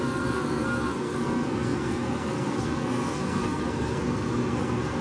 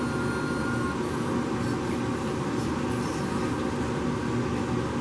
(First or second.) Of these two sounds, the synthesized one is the first